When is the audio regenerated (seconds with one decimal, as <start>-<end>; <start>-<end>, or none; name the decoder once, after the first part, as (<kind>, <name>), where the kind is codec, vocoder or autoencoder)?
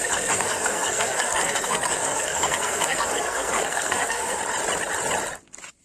0.0-4.4 (codec, SNAC)